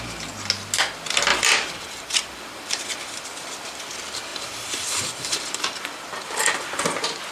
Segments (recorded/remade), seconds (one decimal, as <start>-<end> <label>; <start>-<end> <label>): 0.0-1.3 recorded; 1.3-3.9 remade; 3.9-4.3 recorded; 4.3-6.8 remade; 6.8-7.3 recorded